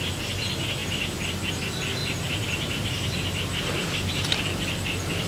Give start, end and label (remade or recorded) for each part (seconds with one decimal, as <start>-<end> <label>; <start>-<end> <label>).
0.0-2.0 recorded; 2.0-5.3 remade